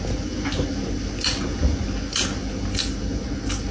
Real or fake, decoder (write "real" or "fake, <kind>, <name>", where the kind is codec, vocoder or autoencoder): real